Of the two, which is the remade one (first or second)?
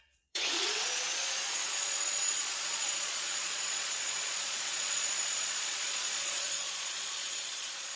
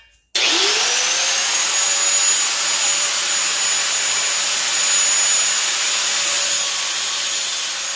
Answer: first